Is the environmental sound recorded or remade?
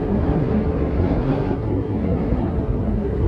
remade